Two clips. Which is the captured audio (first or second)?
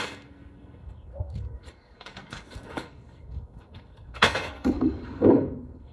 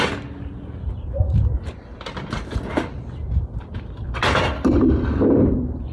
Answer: second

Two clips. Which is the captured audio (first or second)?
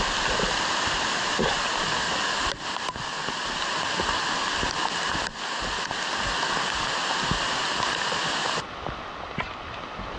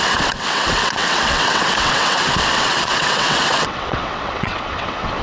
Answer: first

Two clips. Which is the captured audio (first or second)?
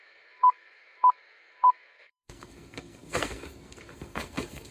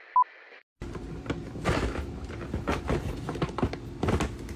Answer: second